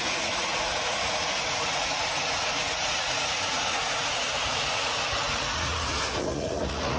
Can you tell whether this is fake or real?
fake